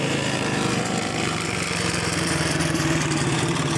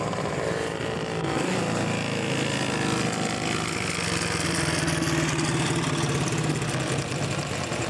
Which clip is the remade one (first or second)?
first